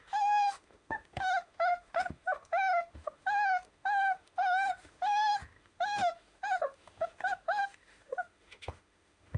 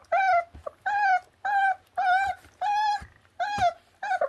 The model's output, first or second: first